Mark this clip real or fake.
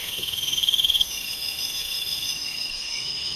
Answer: fake